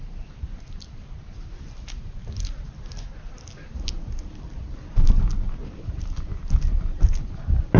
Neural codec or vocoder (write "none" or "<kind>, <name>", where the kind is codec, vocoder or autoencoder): none